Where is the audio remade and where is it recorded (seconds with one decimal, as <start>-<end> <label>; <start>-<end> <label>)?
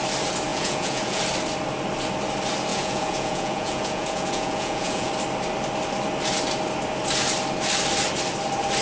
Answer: 0.0-0.5 recorded; 0.5-1.2 remade; 1.2-2.7 recorded; 2.7-5.1 remade; 5.1-8.8 recorded